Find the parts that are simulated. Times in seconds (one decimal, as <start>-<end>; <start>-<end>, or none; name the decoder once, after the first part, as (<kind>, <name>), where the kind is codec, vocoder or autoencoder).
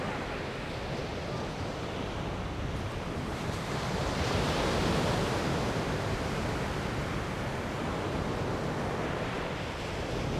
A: 3.3-6.7 (vocoder, BigVGAN v2)